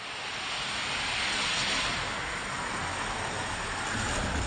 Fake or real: real